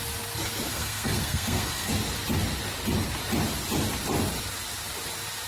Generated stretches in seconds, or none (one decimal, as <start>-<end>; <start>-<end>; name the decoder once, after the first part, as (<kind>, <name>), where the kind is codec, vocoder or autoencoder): 0.7-1.9 (codec, SNAC)